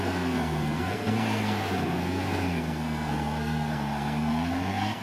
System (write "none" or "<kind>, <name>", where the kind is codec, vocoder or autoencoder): codec, SNAC